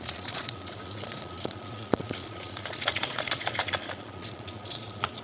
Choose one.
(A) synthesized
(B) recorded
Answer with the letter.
A